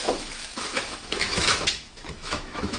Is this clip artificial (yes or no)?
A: yes